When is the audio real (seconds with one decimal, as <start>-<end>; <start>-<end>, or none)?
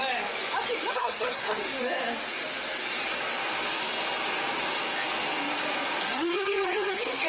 0.0-0.9; 1.6-6.0